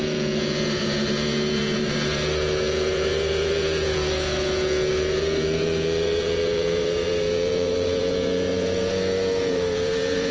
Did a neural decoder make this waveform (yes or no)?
yes